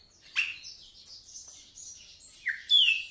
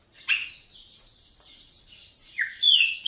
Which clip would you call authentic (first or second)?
first